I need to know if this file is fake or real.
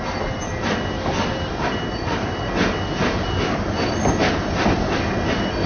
real